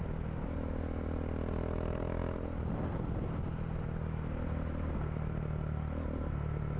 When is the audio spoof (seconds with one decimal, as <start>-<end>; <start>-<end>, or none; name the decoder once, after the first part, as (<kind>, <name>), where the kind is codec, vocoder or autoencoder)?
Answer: none